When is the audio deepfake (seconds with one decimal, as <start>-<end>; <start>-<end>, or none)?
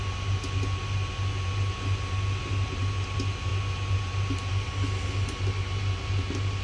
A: none